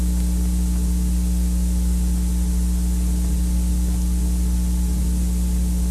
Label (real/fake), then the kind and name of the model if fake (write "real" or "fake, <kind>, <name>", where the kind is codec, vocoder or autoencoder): real